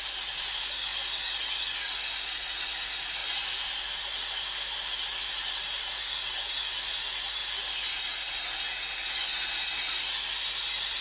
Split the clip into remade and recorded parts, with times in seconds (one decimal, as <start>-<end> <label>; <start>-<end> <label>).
0.0-11.0 recorded